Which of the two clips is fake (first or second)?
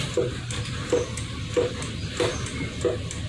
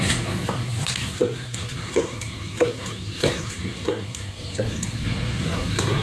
second